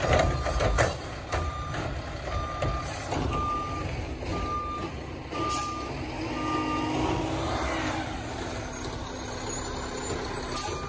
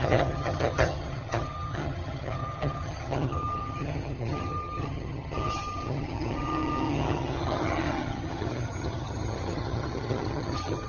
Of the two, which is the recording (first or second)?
first